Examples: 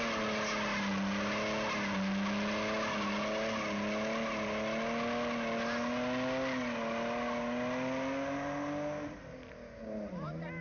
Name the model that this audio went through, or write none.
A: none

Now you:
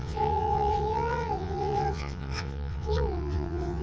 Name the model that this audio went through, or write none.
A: vocoder, WaveNeXt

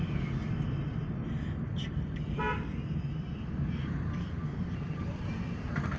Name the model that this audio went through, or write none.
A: none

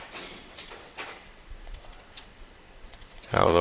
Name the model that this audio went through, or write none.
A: vocoder, WaveNeXt